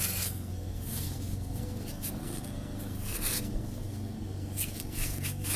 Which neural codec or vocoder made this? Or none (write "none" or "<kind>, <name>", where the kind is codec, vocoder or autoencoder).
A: codec, SNAC